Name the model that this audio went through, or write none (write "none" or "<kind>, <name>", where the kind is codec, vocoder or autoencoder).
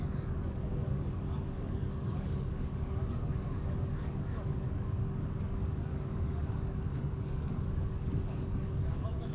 codec, DAC